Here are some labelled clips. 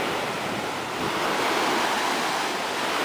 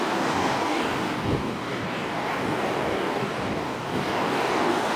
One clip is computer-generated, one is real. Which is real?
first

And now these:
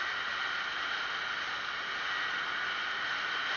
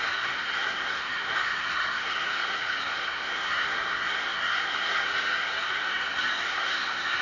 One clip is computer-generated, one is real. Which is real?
first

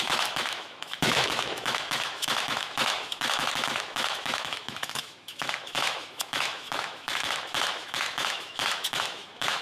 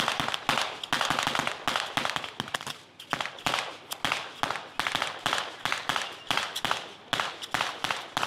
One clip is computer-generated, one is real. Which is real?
second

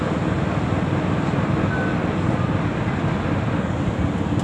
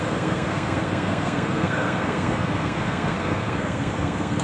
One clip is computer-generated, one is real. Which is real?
first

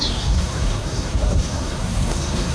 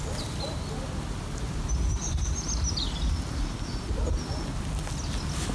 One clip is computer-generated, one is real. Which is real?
second